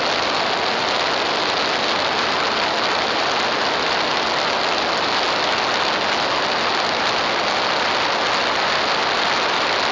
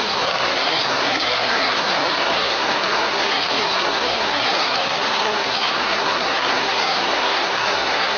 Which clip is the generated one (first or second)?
second